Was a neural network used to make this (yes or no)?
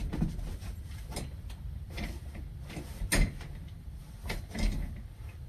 no